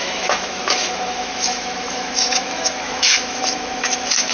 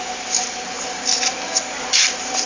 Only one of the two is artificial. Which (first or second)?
first